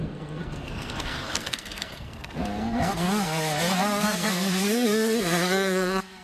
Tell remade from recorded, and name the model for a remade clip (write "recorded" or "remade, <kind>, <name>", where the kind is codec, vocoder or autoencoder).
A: remade, codec, SNAC